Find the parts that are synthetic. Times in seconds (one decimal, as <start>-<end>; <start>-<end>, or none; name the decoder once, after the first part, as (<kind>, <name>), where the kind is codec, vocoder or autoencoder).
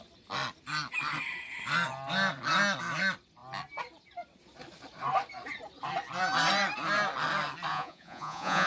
7.7-8.7 (vocoder, Vocos)